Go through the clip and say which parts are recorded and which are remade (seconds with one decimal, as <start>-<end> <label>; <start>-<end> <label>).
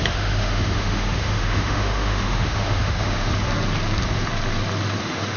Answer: 0.0-3.3 remade; 3.3-5.0 recorded; 5.0-5.4 remade